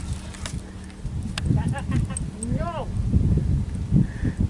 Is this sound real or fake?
real